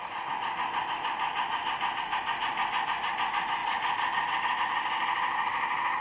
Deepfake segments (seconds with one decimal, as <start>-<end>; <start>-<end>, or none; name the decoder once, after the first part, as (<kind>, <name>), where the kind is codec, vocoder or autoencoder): none